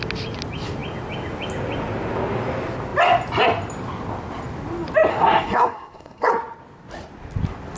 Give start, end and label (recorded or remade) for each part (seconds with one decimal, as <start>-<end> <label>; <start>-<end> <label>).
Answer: 0.0-5.1 recorded; 5.1-6.3 remade; 6.3-7.8 recorded